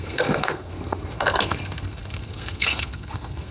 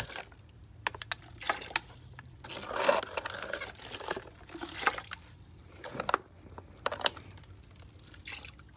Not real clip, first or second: first